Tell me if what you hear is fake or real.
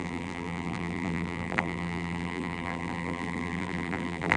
fake